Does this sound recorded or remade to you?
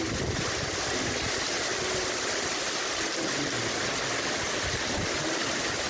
recorded